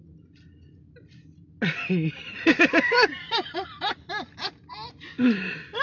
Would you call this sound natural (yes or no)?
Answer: yes